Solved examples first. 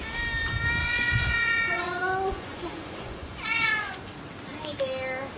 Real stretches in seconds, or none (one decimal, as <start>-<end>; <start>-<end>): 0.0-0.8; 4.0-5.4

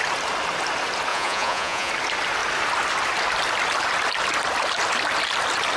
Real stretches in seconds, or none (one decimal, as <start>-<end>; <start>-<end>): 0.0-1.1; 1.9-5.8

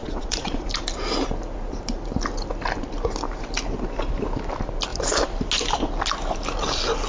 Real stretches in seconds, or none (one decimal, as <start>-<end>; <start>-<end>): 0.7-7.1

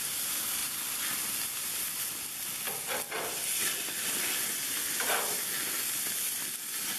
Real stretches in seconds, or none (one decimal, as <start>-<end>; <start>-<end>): 0.0-7.0

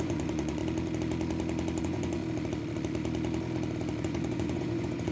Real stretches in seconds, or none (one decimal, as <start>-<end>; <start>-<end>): 0.6-1.8; 2.2-4.0

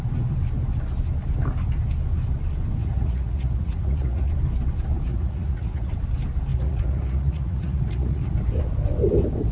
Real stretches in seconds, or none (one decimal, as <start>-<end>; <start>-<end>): 0.0-2.8; 4.3-5.1; 5.9-6.5; 8.3-9.5

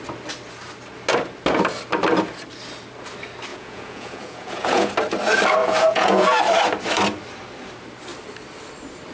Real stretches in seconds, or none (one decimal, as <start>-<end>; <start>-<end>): 0.0-3.5; 4.9-5.6; 6.4-9.1